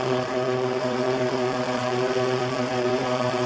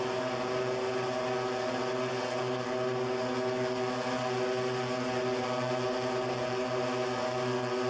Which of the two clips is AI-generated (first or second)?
first